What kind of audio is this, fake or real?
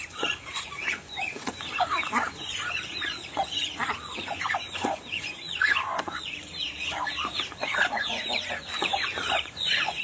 fake